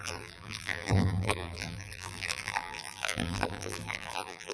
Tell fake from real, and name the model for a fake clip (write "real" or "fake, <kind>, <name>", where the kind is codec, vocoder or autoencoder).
fake, vocoder, BigVGAN v2